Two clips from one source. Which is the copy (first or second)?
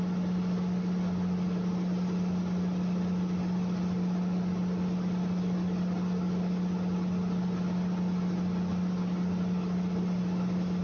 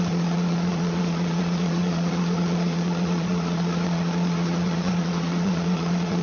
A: second